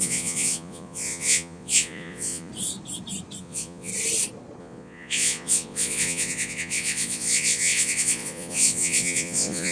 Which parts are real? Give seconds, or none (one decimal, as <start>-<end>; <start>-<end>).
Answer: 2.5-3.4; 3.9-4.6